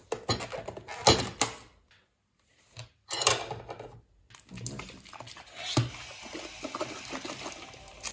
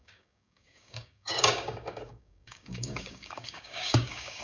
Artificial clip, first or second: second